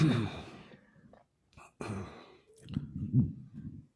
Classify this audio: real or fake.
fake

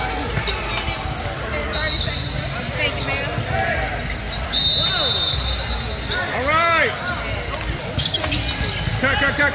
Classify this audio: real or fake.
real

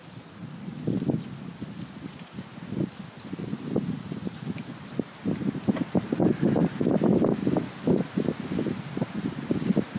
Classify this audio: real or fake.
real